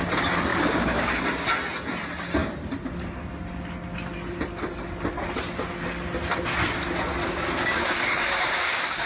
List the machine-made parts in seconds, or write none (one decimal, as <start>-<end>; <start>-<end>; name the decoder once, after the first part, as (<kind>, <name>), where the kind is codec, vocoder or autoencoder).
0.5-1.2 (codec, DAC); 7.2-9.1